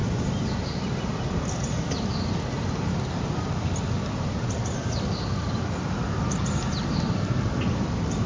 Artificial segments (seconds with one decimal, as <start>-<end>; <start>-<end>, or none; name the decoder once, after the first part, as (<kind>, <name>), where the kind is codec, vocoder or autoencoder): none